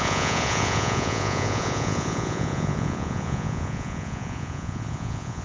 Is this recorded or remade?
remade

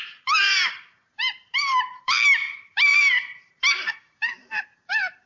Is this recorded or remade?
remade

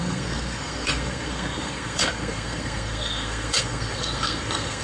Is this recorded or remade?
remade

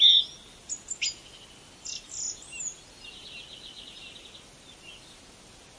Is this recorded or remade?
recorded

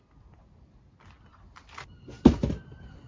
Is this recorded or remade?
recorded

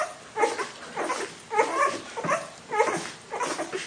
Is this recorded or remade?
recorded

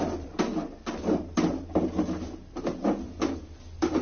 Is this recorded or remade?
recorded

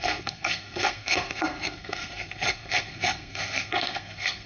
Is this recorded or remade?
remade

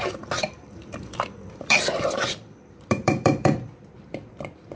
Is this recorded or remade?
remade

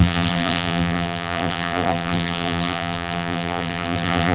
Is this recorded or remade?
remade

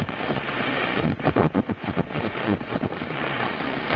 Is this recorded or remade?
remade